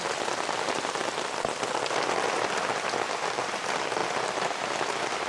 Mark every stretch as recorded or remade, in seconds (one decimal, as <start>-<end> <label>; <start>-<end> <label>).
0.0-5.3 recorded